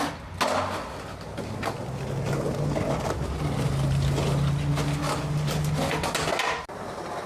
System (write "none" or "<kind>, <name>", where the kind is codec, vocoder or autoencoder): none